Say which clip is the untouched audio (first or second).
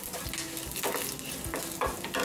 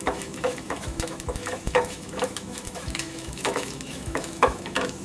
first